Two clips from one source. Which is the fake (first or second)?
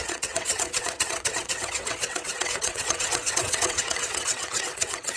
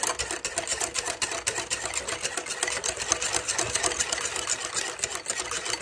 first